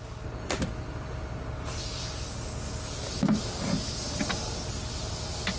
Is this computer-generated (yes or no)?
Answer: no